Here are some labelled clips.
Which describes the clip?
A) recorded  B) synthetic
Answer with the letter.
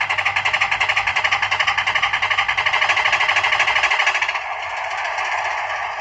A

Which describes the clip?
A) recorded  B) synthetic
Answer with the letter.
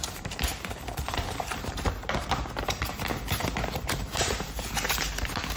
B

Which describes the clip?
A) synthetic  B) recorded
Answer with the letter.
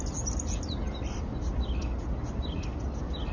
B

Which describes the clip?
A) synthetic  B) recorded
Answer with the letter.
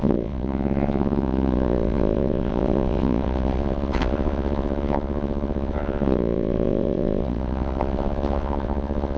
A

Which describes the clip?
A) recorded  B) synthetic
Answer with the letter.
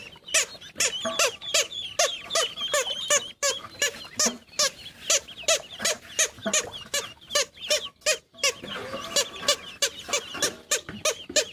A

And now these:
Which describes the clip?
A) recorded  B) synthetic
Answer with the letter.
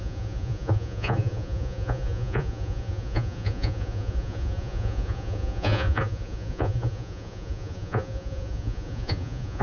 B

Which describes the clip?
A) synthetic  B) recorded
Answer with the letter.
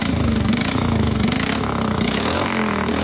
A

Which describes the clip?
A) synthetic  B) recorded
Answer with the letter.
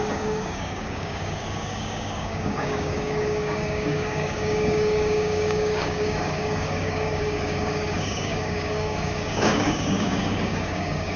A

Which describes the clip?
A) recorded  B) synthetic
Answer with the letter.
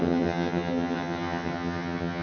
B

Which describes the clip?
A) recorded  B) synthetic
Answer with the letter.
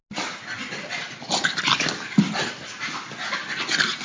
A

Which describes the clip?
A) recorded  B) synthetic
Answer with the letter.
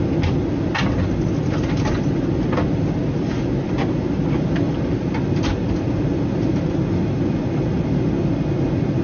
A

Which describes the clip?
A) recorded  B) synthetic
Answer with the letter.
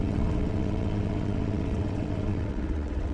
B